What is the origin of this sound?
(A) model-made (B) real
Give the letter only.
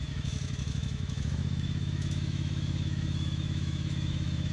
A